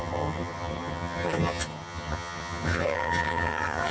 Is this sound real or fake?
fake